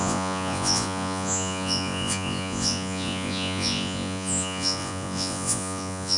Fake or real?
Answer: fake